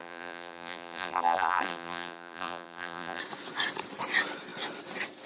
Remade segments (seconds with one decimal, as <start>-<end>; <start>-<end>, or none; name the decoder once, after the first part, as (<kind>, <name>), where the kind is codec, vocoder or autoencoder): 0.0-3.2 (vocoder, BigVGAN v2)